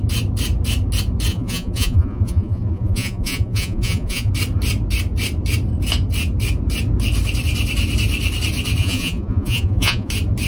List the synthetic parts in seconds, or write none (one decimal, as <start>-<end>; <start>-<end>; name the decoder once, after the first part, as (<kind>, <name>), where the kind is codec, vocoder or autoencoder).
1.3-4.3 (vocoder, Vocos); 8.8-10.1

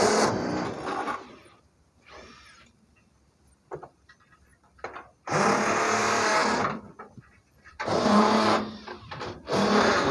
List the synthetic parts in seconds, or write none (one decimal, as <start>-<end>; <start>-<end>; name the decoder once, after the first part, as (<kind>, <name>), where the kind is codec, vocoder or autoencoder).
0.0-4.5 (vocoder, BigVGAN v2); 6.0-10.1

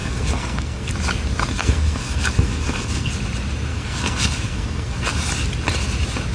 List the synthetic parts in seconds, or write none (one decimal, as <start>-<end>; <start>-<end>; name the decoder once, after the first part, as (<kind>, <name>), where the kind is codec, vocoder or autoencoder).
0.0-0.9 (codec, SNAC); 1.5-3.1; 3.7-5.1